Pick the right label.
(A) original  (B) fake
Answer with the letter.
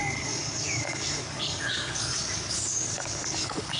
B